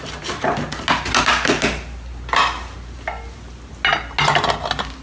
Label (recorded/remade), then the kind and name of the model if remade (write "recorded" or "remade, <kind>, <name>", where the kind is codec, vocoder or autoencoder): recorded